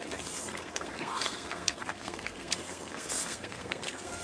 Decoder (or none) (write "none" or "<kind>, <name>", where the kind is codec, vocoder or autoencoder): codec, SNAC